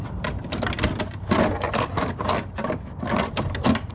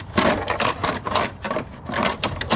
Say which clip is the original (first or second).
first